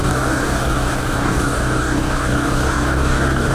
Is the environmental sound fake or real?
fake